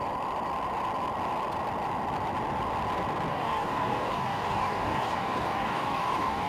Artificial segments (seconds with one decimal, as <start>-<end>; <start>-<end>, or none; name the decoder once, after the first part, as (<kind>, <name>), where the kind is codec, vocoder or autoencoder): 3.3-6.5 (codec, DAC)